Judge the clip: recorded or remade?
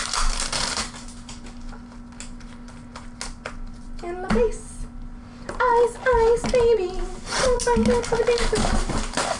recorded